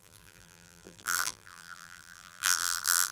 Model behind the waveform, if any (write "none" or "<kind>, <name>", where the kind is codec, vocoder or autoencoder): vocoder, BigVGAN v2